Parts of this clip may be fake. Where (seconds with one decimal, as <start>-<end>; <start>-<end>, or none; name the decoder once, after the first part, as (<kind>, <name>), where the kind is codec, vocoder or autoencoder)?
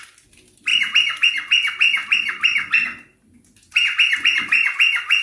none